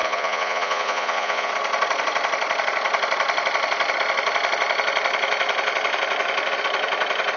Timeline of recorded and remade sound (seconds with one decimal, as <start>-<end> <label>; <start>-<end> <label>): 0.0-1.5 remade; 1.5-7.4 recorded